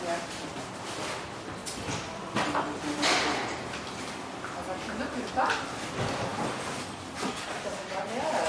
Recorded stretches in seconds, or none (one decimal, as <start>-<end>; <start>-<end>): 0.0-8.5